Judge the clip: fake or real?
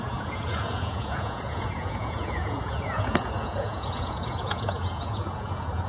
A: fake